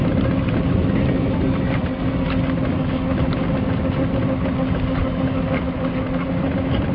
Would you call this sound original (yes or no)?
yes